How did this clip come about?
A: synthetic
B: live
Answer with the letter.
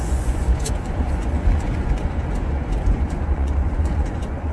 A